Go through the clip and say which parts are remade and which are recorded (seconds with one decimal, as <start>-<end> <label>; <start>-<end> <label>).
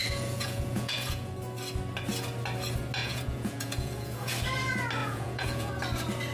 0.0-1.3 remade; 1.3-3.0 recorded; 3.0-4.3 remade; 4.3-5.0 recorded; 5.0-5.7 remade; 5.7-6.3 recorded